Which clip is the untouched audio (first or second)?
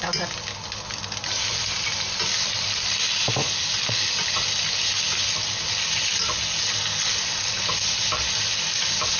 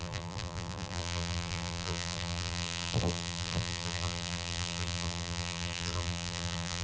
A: first